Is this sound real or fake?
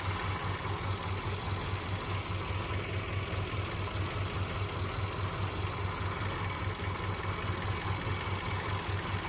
real